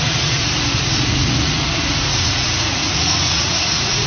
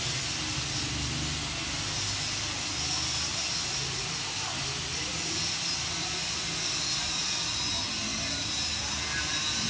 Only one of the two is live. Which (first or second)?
second